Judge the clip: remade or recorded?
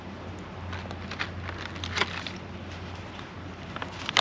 recorded